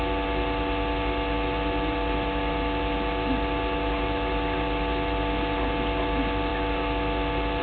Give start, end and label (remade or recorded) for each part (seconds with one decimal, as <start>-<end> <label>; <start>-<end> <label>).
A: 0.0-7.6 recorded